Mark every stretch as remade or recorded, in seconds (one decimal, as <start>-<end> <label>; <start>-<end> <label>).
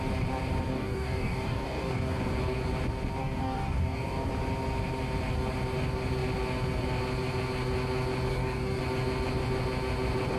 0.0-0.7 recorded; 0.7-2.2 remade; 2.2-3.2 recorded; 3.2-4.3 remade; 4.3-8.3 recorded; 8.3-8.8 remade; 8.8-10.4 recorded